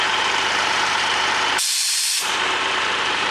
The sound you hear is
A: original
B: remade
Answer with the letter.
B